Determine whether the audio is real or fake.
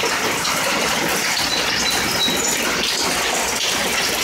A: real